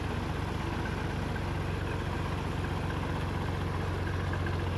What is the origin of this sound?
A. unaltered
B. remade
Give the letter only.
A